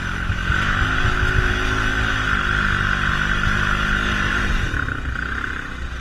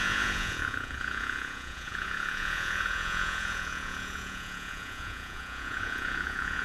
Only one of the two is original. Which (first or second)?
first